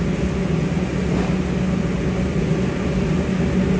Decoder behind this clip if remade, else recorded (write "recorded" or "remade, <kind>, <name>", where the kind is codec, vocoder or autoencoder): recorded